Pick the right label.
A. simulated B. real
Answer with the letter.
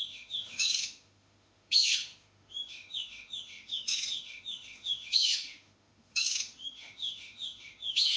A